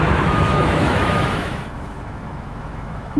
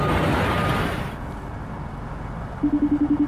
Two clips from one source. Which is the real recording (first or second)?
second